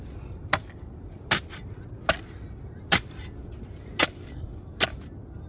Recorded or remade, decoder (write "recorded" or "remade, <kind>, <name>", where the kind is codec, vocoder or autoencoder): recorded